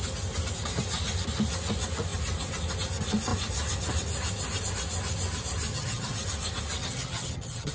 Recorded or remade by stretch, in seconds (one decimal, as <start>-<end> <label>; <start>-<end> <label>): 0.0-5.7 recorded; 5.7-6.2 remade; 6.2-6.8 recorded; 6.8-7.7 remade